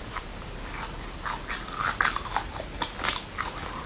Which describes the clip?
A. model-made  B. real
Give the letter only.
B